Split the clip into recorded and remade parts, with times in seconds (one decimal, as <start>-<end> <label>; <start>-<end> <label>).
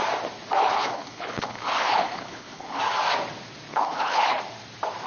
0.0-0.6 recorded; 0.6-2.8 remade; 2.8-3.7 recorded; 3.7-4.4 remade; 4.4-5.1 recorded